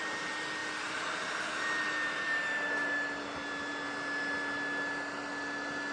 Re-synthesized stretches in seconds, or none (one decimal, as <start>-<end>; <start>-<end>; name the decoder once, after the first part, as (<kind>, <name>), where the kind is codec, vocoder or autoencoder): 0.6-1.3 (vocoder, BigVGAN v2)